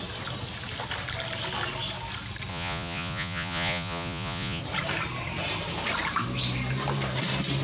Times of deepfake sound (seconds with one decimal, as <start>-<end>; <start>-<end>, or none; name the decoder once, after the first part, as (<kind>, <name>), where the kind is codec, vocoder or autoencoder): 2.5-4.6 (vocoder, Vocos)